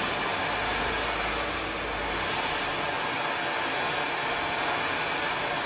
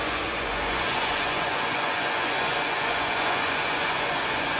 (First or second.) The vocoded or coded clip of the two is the second